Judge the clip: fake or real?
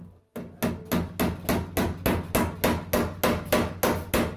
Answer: real